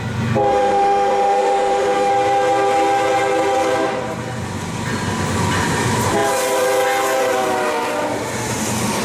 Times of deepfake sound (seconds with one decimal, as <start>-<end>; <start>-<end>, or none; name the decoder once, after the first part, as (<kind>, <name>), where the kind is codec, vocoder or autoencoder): 0.5-2.1 (autoencoder, DAC-VAE)